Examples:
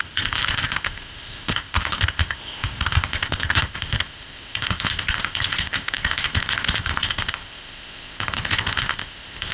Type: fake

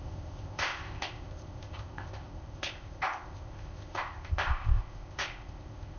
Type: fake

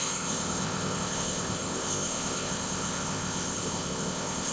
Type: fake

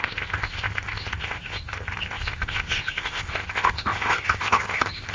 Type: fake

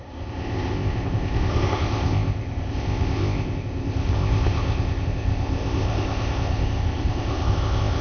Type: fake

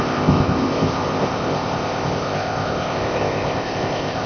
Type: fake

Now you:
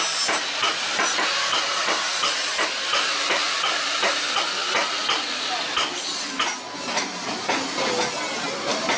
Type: real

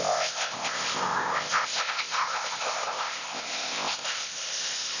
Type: fake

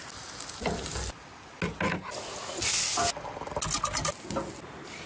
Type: real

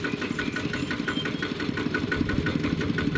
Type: real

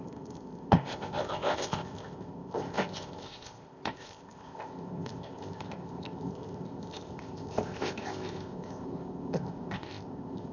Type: fake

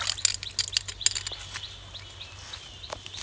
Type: real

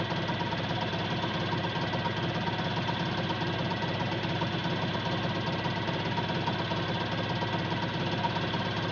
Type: real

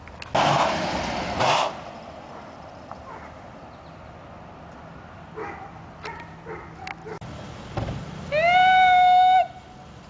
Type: real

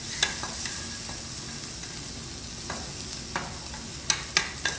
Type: real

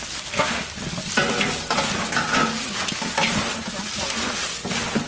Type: real